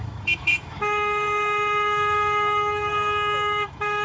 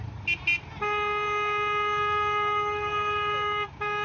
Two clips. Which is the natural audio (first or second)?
second